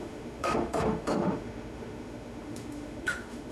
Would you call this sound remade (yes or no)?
yes